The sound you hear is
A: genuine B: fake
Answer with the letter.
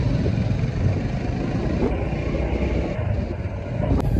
A